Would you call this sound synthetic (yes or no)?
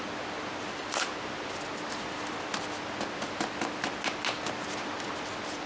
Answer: no